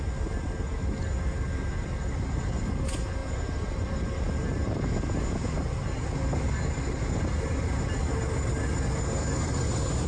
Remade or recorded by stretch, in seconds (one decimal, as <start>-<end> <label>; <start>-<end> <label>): 0.0-10.1 recorded